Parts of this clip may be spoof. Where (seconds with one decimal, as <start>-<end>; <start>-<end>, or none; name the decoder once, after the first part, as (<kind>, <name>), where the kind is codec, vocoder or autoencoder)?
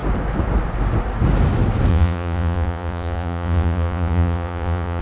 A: 1.9-5.0 (vocoder, Vocos)